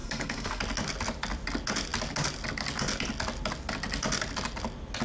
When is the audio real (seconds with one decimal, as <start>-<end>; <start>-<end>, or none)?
0.6-5.0